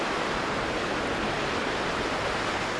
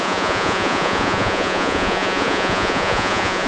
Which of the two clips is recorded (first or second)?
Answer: first